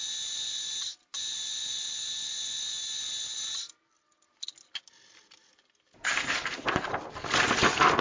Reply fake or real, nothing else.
real